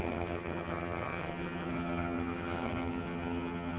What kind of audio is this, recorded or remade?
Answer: remade